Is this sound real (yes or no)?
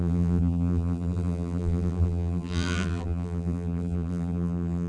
no